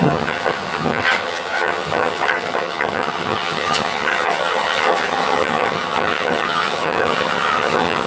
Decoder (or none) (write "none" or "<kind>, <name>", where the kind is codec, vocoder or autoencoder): vocoder, HiFi-GAN